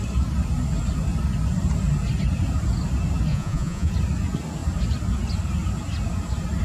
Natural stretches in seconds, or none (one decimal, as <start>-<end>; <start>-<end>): 0.0-3.3; 3.9-6.6